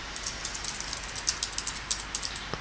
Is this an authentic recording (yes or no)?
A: yes